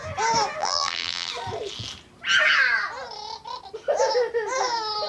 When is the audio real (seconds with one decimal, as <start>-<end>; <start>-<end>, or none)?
0.0-0.6; 1.3-5.1